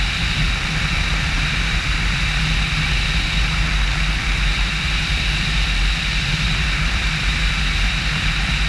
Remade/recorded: remade